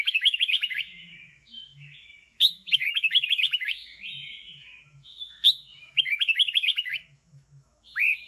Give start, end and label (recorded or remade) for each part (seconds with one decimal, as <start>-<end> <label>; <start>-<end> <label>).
0.0-8.3 remade